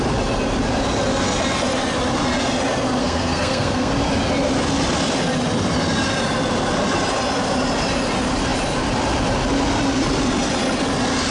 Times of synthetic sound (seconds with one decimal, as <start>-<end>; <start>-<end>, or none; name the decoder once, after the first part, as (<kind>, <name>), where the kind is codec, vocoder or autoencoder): 3.0-3.9 (codec, SNAC)